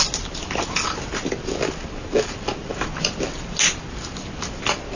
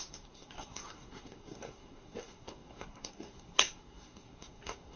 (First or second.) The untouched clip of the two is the first